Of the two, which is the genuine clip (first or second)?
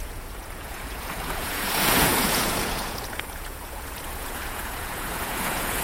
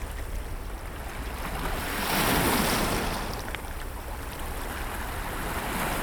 second